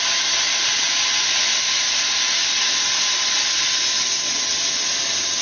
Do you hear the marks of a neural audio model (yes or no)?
no